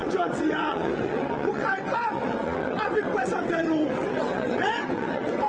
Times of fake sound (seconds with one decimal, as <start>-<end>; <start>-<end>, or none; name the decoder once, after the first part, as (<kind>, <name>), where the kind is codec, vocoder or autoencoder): 0.0-5.5 (vocoder, WaveNeXt)